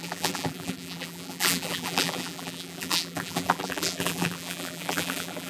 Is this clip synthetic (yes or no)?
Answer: yes